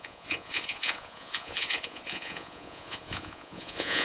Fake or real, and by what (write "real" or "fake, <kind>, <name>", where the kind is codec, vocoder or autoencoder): fake, vocoder, Vocos